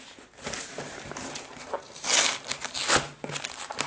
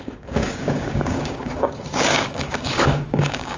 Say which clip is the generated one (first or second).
second